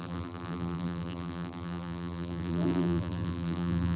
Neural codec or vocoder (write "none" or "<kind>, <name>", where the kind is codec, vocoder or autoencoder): vocoder, BigVGAN v2